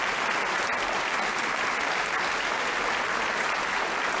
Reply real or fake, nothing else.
real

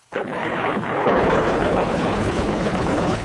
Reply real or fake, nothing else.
fake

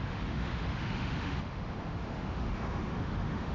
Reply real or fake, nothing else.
fake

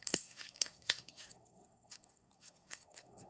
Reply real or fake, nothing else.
fake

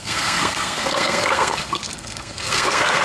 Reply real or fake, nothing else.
fake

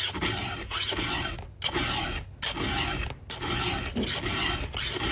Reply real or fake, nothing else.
real